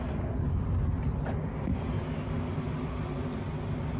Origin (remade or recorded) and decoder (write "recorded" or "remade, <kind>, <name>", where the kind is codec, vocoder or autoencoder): recorded